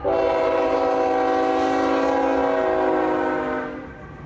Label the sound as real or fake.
real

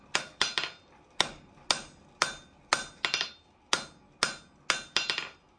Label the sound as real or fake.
real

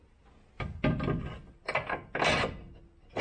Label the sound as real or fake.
real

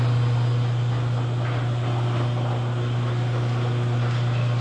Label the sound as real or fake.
real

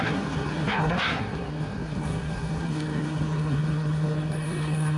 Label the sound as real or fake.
fake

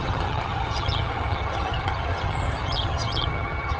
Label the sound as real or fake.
fake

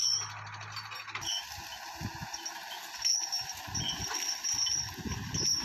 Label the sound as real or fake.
real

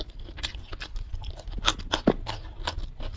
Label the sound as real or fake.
real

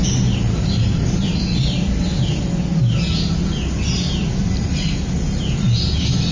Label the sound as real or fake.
real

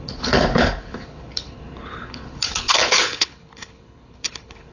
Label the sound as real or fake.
fake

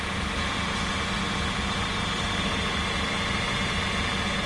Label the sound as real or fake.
real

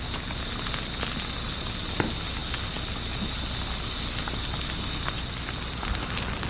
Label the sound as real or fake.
real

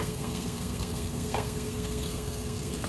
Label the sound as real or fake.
fake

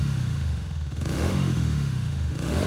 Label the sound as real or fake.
fake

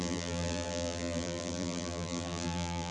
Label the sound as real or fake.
fake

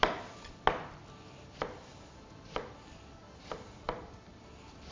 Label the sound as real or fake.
real